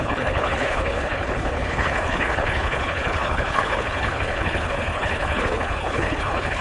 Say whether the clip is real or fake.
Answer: fake